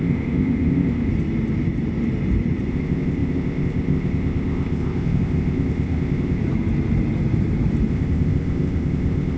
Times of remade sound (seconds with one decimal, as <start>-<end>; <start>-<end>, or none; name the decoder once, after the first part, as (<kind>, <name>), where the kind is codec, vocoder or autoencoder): 0.0-1.1 (codec, ZipCodec); 2.7-6.4; 7.9-9.4